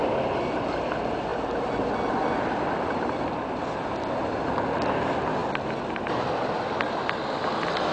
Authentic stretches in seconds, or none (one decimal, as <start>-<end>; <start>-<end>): 0.0-7.9